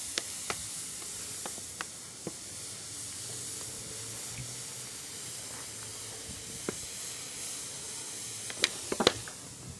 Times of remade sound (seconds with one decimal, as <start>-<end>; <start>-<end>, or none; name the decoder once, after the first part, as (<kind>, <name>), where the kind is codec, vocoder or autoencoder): none